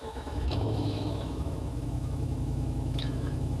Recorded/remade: remade